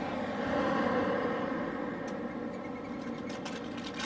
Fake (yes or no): no